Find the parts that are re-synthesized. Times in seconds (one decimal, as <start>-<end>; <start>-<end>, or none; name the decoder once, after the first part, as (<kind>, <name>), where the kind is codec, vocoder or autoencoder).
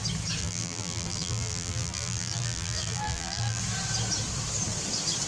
0.4-3.6 (vocoder, BigVGAN v2)